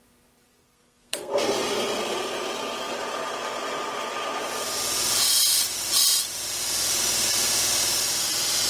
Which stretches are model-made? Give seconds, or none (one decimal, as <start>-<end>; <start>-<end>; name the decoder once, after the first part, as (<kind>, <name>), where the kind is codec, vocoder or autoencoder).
0.6-1.3 (codec, SNAC)